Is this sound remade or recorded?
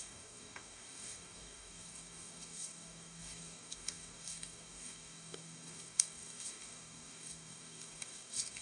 remade